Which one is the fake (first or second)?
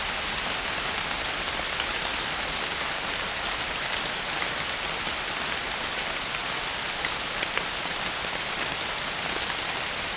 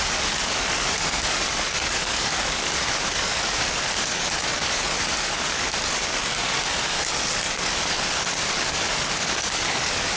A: second